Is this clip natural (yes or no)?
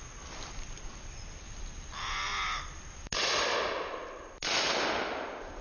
yes